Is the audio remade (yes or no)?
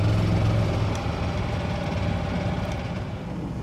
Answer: no